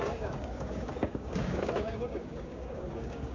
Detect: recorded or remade remade